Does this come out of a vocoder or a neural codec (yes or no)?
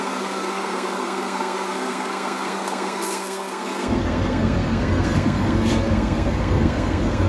yes